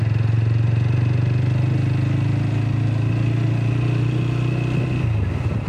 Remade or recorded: recorded